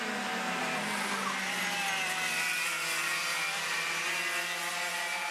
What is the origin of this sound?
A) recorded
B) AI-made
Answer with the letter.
A